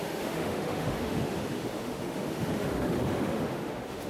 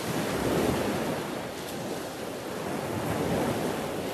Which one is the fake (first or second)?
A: first